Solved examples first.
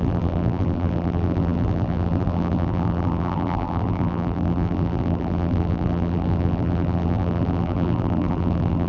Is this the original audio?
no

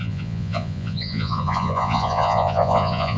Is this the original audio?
no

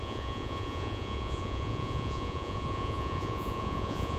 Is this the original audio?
no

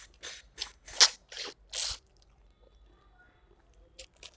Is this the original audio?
yes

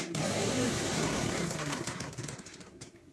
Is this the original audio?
no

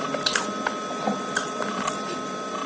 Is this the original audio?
yes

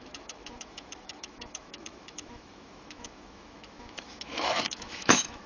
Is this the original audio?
no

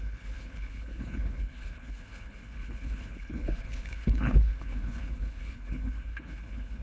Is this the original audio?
no